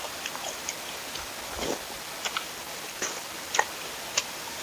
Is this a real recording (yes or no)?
yes